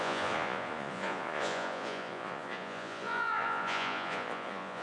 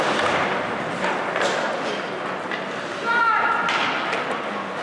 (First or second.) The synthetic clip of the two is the first